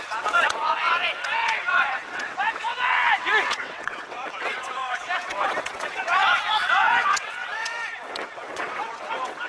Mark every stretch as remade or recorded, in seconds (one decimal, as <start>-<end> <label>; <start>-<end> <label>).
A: 0.0-9.5 remade